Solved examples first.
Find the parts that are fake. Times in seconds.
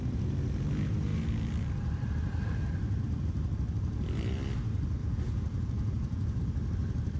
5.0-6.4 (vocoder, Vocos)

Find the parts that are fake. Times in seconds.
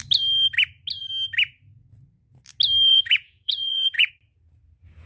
2.9-4.1 (vocoder, Vocos)